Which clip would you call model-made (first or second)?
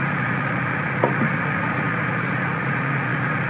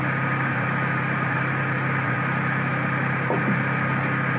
first